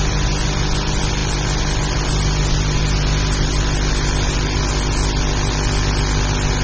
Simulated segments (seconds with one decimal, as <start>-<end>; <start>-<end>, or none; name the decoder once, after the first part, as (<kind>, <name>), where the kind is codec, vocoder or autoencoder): 1.2-5.2 (vocoder, BigVGAN v2)